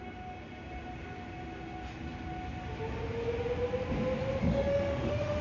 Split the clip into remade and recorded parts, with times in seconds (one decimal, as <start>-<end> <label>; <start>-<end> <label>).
0.0-4.4 recorded; 4.4-5.4 remade